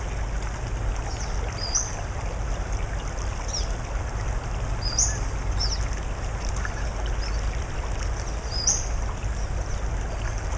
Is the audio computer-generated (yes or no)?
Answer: no